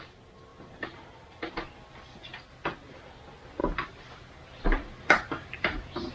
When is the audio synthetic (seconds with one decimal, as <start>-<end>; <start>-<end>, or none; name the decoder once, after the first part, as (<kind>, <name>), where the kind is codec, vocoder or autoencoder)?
0.5-1.5 (vocoder, BigVGAN v2); 3.6-6.1